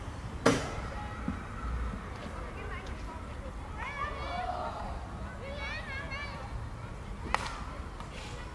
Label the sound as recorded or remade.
recorded